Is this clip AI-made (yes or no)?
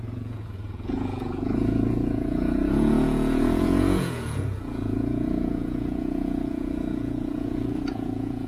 yes